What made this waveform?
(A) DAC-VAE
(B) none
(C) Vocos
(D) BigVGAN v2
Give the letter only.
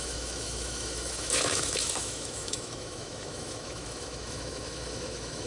A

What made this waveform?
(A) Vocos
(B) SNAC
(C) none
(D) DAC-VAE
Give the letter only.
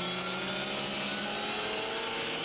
C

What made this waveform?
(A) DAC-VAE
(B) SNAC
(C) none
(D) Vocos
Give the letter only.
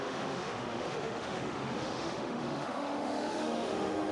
A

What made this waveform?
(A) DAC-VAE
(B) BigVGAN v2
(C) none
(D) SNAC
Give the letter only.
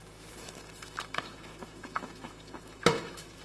A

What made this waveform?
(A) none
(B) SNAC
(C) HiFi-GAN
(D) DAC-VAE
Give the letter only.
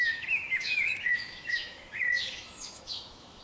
D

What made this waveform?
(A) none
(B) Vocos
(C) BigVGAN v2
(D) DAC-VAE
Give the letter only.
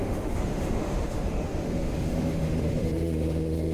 D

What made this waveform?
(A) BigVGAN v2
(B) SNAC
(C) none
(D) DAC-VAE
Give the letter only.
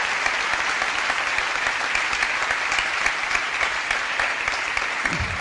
C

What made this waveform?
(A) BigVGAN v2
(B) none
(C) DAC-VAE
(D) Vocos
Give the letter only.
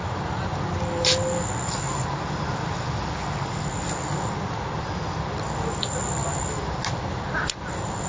B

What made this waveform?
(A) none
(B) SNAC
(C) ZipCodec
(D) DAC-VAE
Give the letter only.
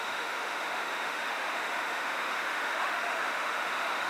D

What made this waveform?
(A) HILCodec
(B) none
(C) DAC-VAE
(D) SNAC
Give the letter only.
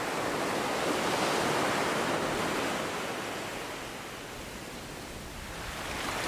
B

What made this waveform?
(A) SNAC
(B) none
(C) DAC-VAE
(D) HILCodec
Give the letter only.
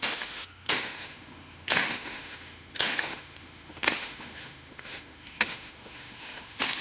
C